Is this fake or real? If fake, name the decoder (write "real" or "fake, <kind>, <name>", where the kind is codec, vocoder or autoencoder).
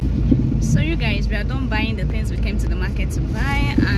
real